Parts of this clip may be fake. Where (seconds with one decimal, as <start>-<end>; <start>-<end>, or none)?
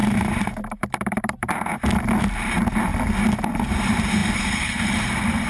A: 0.0-1.7; 2.2-2.9; 3.7-5.5